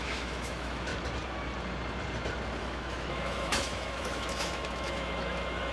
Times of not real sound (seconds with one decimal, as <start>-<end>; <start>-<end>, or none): 0.0-0.9; 2.6-5.7